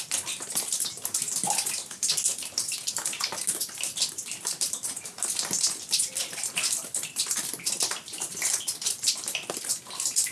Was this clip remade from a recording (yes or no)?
no